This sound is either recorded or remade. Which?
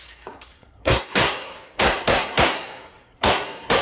remade